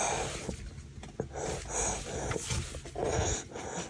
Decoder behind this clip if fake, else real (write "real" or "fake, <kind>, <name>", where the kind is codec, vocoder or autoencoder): real